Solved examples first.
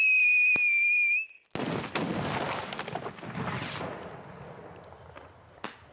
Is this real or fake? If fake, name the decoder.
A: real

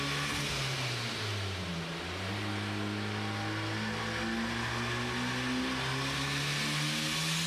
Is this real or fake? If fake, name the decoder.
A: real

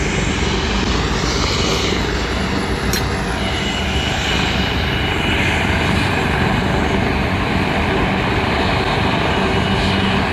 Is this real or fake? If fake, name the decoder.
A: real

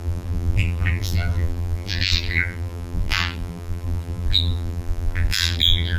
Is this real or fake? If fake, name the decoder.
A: fake, vocoder, BigVGAN v2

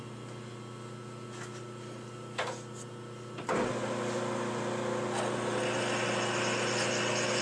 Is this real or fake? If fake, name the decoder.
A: real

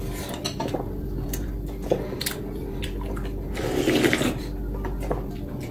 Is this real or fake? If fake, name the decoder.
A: real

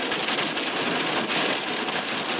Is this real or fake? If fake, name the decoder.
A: real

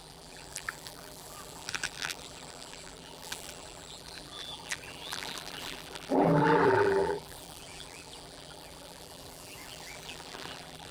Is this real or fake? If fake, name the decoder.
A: fake, vocoder, BigVGAN v2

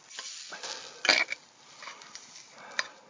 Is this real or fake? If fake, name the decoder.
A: real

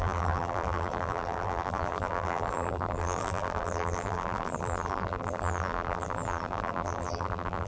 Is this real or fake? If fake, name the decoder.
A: fake, vocoder, BigVGAN v2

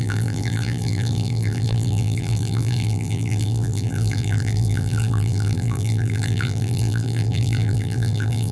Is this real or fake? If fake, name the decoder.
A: fake, vocoder, BigVGAN v2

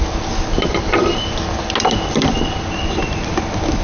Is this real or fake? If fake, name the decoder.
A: real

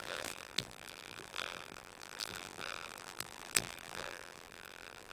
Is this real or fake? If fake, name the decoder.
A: fake, vocoder, BigVGAN v2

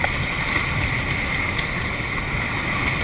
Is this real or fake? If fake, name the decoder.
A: real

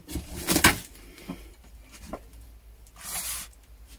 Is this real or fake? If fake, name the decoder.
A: fake, vocoder, BigVGAN v2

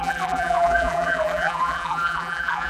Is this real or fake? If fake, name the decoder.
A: fake, vocoder, BigVGAN v2